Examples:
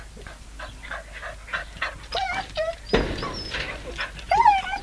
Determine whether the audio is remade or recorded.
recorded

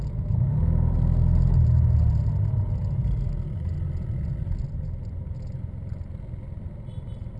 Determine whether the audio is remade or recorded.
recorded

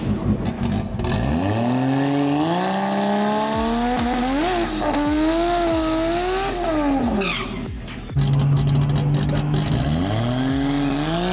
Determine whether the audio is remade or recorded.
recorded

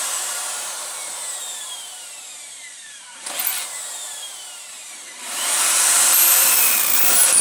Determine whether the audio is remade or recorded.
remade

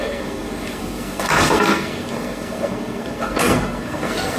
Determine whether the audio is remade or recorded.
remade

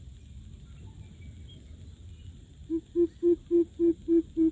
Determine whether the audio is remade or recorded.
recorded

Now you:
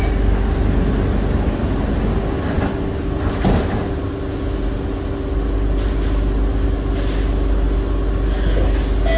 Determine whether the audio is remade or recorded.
recorded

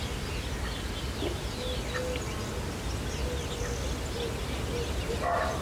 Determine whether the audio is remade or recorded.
recorded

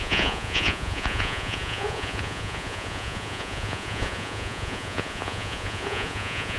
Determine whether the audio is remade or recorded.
remade